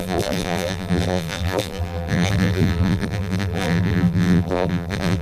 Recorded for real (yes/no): no